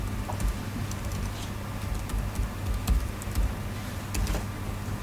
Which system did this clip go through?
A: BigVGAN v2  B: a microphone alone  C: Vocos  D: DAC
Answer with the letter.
B